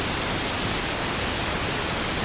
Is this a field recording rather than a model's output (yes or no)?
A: yes